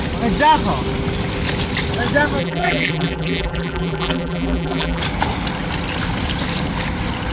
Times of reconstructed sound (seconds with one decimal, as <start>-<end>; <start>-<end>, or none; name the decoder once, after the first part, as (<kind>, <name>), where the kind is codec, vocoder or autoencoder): 2.4-5.0 (vocoder, BigVGAN v2)